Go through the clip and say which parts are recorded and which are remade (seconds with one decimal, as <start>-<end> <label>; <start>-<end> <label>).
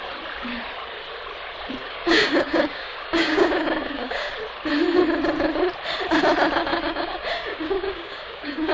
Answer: 0.0-1.8 recorded; 1.8-4.3 remade; 4.3-6.7 recorded; 6.7-8.7 remade